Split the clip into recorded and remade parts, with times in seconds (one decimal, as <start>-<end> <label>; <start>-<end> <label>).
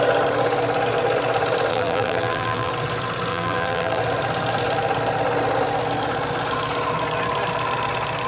0.0-1.7 recorded; 1.7-2.7 remade; 2.7-3.3 recorded; 3.3-4.0 remade; 4.0-8.3 recorded